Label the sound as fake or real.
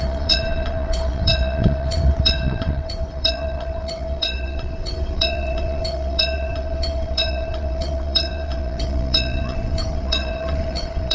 fake